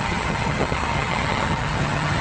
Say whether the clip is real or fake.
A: fake